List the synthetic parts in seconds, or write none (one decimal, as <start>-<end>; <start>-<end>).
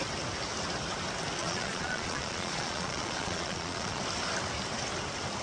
1.4-4.0